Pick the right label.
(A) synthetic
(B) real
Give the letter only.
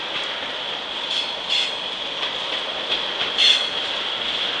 B